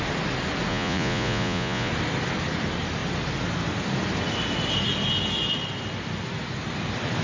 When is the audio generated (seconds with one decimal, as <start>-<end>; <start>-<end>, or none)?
0.7-1.9